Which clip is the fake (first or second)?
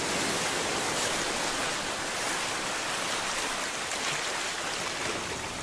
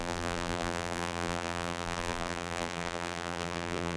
second